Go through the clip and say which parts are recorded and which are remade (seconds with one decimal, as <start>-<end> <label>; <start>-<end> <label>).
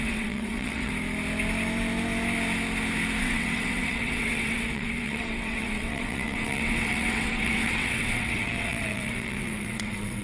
0.0-0.9 remade; 0.9-3.2 recorded; 3.2-10.2 remade